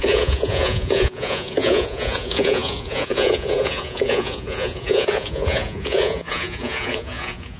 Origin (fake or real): fake